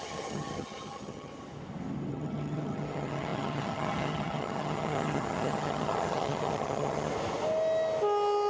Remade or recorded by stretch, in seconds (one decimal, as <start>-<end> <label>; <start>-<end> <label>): 0.0-1.3 remade; 1.3-2.1 recorded; 2.1-7.1 remade; 7.1-8.5 recorded